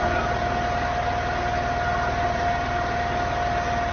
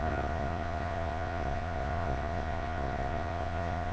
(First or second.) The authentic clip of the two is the first